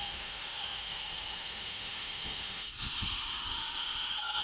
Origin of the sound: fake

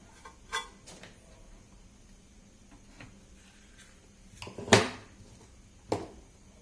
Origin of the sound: real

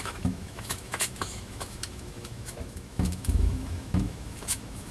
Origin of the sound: fake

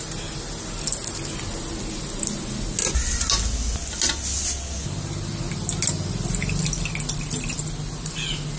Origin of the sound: real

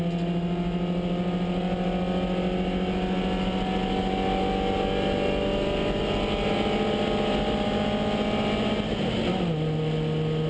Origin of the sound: real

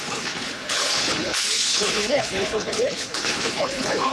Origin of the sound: fake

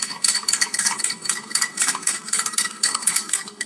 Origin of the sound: fake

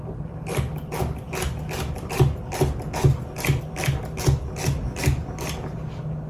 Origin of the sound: real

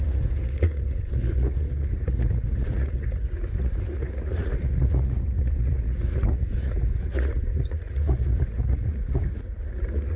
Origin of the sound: fake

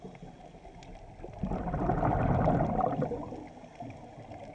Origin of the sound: real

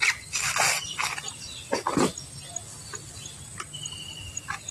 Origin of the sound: real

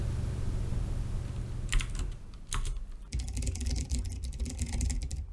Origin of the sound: real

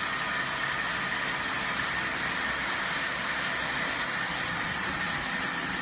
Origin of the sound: real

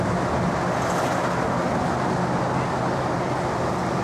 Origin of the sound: real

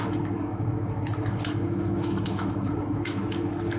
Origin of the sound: fake